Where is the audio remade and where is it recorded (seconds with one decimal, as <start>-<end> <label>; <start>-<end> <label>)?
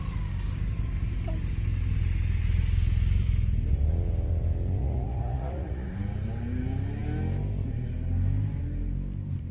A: 0.0-4.8 recorded; 4.8-5.9 remade; 5.9-9.5 recorded